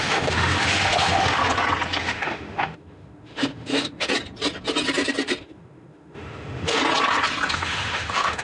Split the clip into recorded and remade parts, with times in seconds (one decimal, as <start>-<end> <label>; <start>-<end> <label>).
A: 0.0-1.4 remade; 1.4-2.0 recorded; 2.0-4.1 remade; 4.1-5.4 recorded; 5.4-6.8 remade; 6.8-7.5 recorded; 7.5-8.4 remade